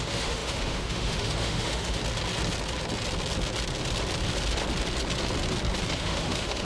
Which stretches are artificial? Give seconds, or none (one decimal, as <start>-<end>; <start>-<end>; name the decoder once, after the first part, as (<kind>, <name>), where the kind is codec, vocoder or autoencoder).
0.0-2.0 (autoencoder, DAC-VAE); 6.0-6.6